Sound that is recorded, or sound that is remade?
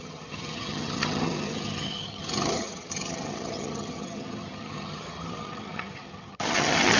remade